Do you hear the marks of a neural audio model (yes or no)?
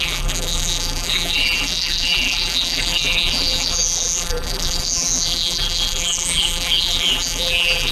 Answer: yes